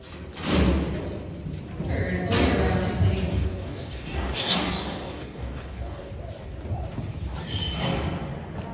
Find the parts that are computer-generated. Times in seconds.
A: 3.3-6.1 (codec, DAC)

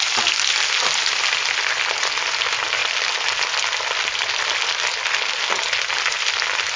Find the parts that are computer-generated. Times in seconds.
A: none

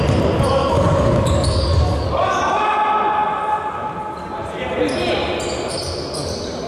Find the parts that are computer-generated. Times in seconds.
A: 0.6-2.4 (codec, DAC)

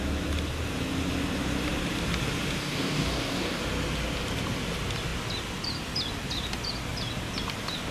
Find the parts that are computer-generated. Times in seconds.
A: 2.6-3.6 (codec, DAC)

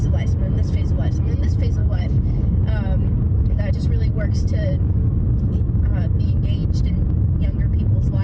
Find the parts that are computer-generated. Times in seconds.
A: 1.8-2.6 (codec, DAC)

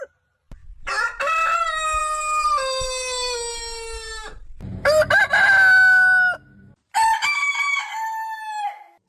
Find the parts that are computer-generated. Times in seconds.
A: none

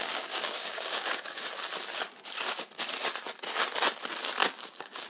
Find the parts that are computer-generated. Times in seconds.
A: 0.0-1.7 (codec, DAC); 4.4-5.1